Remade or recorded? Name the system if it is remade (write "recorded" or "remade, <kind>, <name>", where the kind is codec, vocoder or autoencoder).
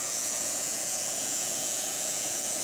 remade, vocoder, Vocos